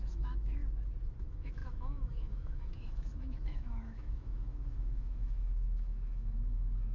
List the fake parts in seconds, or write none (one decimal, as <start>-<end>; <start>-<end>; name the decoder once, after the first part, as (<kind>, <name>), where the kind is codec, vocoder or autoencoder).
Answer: 0.0-0.6 (autoencoder, DAC-VAE); 1.2-6.9

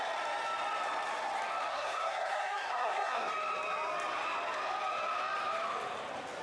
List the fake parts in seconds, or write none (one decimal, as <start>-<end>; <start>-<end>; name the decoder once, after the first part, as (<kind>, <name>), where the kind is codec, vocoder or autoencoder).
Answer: 1.7-3.3 (codec, SNAC)

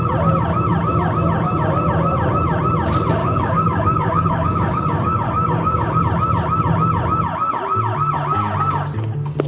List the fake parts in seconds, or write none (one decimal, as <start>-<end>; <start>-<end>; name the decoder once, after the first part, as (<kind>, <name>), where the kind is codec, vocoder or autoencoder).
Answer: 3.2-6.0 (codec, DAC)